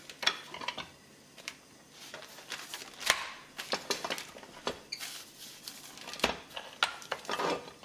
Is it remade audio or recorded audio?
recorded